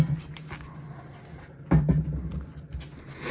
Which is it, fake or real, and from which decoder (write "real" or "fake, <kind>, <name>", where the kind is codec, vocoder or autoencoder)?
real